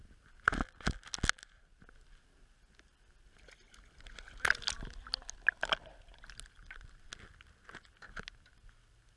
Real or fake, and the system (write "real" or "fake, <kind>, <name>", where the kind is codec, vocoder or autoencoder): real